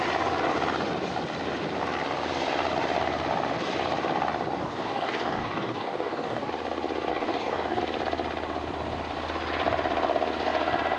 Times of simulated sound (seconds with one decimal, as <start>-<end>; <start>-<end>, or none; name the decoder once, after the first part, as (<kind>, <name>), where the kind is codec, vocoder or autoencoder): 4.6-6.5 (codec, DAC); 7.1-7.8